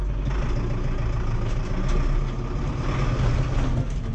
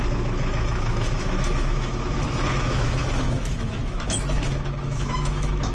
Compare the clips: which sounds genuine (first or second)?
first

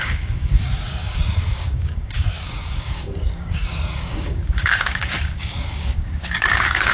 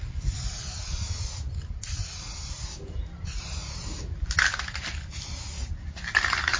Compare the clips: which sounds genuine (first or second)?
second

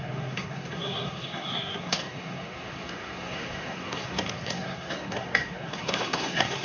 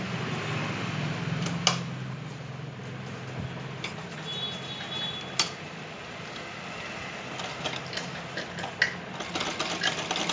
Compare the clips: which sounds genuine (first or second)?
second